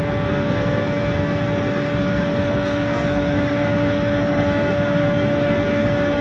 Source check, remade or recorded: remade